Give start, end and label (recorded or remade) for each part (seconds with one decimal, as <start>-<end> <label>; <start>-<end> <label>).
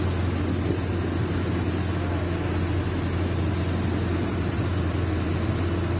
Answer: 0.0-4.3 recorded; 4.3-5.3 remade; 5.3-6.0 recorded